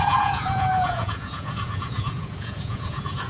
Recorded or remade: remade